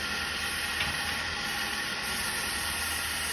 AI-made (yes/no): no